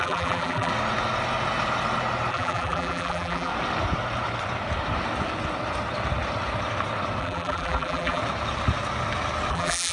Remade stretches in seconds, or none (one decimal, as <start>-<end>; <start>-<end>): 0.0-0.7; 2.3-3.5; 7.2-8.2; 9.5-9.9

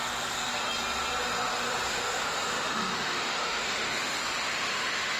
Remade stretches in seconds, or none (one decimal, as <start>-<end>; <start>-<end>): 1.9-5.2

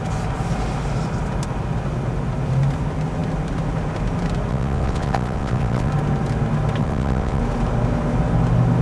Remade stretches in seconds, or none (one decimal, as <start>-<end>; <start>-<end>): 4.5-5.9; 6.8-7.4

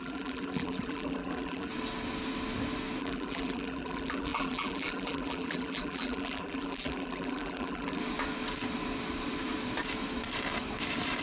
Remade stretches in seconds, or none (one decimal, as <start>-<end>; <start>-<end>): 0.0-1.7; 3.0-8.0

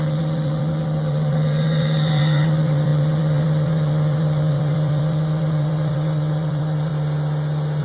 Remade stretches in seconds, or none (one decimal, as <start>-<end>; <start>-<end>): 0.0-6.9